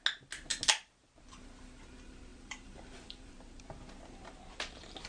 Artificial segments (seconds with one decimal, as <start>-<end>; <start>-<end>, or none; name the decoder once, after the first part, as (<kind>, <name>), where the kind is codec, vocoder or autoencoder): 2.3-3.3 (vocoder, BigVGAN v2)